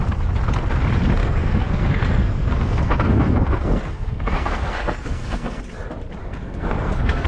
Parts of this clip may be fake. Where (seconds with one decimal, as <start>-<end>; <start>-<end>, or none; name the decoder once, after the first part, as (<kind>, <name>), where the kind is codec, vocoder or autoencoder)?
1.2-5.6 (codec, SNAC); 6.2-7.3